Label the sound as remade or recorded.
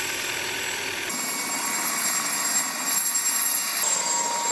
recorded